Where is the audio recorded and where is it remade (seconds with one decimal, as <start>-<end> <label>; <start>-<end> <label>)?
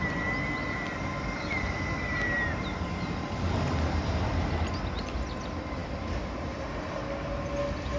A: 0.0-8.0 recorded